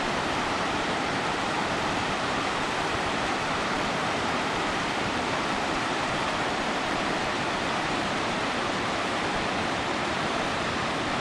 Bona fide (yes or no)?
no